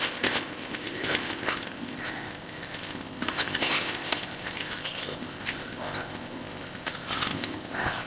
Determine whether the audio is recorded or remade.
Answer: remade